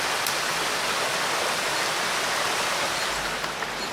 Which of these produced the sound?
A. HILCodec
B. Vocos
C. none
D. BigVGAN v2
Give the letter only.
C